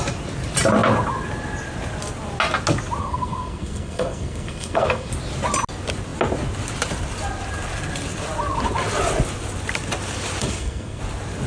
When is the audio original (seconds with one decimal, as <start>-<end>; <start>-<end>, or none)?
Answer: 0.0-3.0; 5.1-10.4; 11.0-11.5